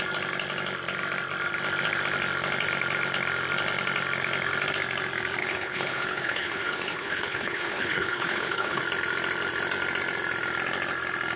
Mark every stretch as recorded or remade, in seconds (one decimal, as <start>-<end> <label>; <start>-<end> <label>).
0.0-5.4 recorded; 5.4-8.8 remade; 8.8-11.4 recorded

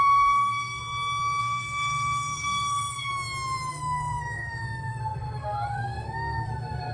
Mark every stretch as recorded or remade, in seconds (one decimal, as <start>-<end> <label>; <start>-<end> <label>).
0.0-0.8 remade; 0.8-1.4 recorded; 1.4-3.1 remade; 3.1-3.7 recorded; 3.7-6.9 remade

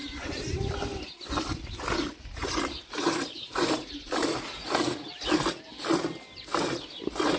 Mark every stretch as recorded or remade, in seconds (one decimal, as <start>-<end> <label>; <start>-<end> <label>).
0.0-0.7 remade; 0.7-2.4 recorded; 2.4-4.8 remade; 4.8-7.4 recorded

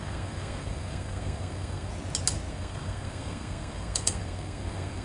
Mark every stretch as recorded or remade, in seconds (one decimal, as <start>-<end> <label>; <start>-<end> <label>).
0.0-1.9 remade; 1.9-2.5 recorded; 2.5-5.0 remade

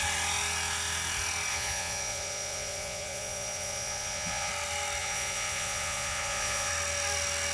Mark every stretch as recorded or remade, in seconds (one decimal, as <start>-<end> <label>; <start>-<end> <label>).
0.0-1.5 recorded; 1.5-4.5 remade; 4.5-5.0 recorded; 5.0-6.7 remade; 6.7-7.5 recorded

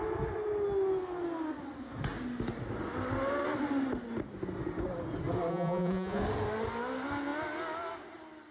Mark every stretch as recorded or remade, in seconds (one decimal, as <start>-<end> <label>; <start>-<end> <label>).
0.0-5.5 recorded; 5.5-6.2 remade; 6.2-8.5 recorded

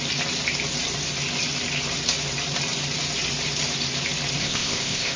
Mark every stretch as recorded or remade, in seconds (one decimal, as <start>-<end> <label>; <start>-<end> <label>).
0.0-4.4 recorded; 4.4-5.2 remade